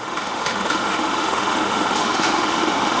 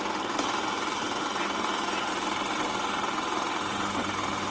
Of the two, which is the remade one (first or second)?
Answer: first